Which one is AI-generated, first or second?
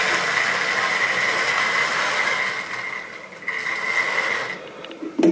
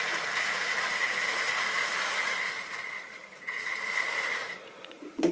second